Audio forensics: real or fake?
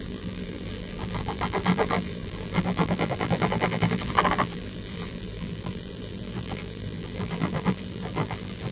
fake